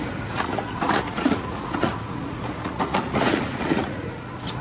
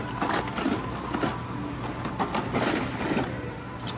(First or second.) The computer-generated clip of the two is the first